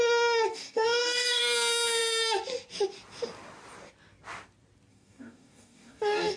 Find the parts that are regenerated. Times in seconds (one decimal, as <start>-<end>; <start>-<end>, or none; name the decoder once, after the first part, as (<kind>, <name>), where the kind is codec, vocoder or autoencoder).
0.5-1.4 (codec, DAC); 4.9-6.4